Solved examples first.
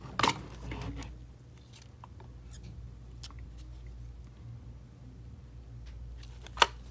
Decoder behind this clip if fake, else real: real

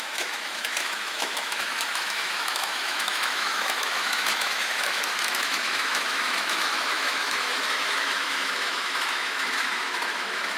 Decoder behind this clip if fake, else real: fake, autoencoder, DAC-VAE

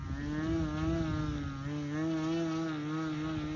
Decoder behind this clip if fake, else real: real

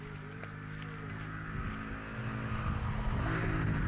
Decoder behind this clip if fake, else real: real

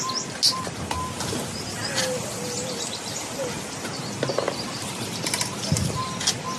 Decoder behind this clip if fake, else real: real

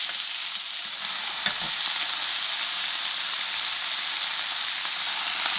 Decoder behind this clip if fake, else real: real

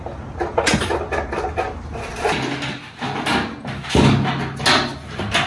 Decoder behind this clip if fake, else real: real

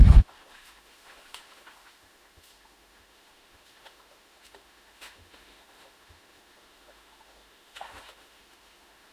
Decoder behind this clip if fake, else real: fake, autoencoder, DAC-VAE